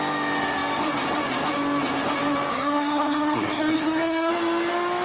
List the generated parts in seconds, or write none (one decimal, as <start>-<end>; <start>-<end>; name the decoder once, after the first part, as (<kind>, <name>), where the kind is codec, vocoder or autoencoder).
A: 2.5-4.3 (codec, SNAC)